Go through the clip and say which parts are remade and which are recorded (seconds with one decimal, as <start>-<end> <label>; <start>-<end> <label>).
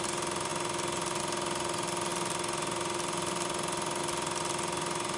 0.0-5.2 recorded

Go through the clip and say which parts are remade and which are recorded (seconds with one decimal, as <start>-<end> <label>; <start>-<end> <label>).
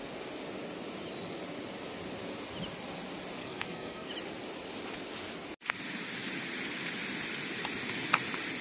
0.0-3.4 recorded; 3.4-4.1 remade; 4.1-8.6 recorded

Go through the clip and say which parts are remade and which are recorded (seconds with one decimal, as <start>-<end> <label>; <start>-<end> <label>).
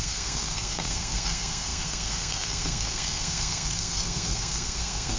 0.0-5.2 remade